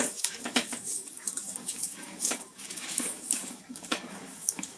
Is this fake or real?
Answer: fake